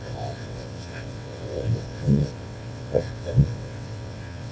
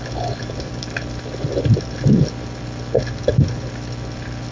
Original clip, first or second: second